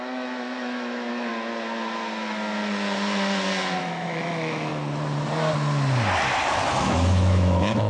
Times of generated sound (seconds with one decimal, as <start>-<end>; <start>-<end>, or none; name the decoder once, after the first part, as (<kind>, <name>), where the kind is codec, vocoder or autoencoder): 0.0-1.3 (autoencoder, DAC-VAE); 3.8-4.7; 6.8-7.9